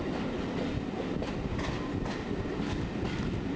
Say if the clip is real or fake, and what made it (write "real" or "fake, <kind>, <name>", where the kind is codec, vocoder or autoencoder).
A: real